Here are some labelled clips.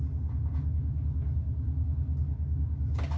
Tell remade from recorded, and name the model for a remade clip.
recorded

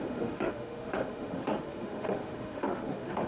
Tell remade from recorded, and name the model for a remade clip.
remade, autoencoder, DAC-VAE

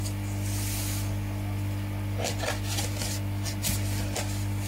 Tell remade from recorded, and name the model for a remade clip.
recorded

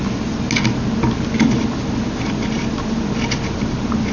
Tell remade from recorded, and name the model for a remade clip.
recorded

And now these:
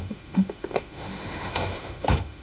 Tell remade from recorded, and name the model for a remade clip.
remade, autoencoder, DAC-VAE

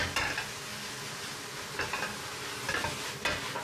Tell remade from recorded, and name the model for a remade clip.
recorded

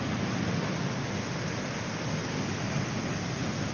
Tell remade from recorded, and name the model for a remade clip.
recorded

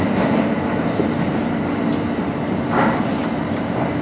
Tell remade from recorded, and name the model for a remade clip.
recorded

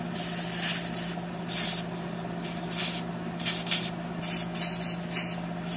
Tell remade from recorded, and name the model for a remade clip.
recorded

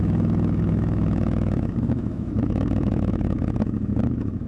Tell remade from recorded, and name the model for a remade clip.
remade, autoencoder, DAC-VAE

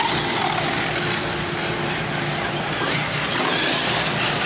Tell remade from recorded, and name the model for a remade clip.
recorded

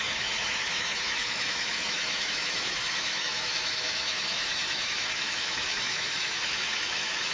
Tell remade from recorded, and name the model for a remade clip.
remade, autoencoder, DAC-VAE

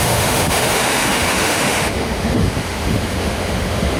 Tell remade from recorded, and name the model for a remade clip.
remade, autoencoder, DAC-VAE